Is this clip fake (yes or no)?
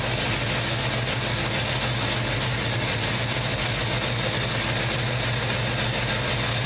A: no